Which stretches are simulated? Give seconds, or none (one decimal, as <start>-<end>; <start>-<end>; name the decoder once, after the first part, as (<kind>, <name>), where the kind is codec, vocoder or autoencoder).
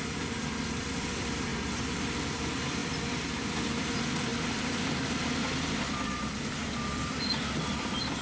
0.0-1.5 (vocoder, BigVGAN v2); 2.2-8.2